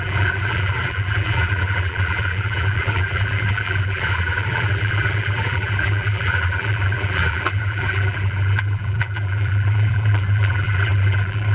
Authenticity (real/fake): fake